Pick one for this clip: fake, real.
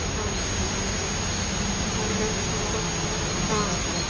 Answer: real